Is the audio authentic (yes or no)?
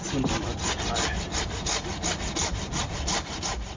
yes